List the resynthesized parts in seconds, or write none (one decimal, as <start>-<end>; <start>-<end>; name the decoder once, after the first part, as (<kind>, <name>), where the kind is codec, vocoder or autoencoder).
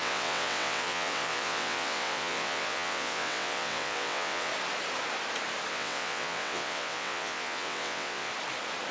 0.0-4.5 (vocoder, WaveNeXt); 5.7-8.3